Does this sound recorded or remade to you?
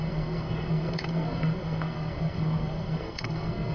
remade